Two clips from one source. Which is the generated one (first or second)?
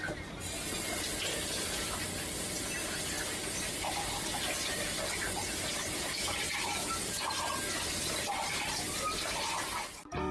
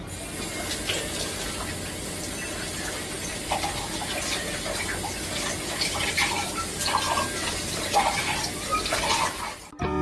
first